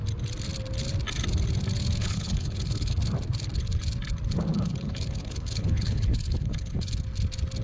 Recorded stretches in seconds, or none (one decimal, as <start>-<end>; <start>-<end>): 0.0-2.0; 3.0-4.5; 7.0-7.6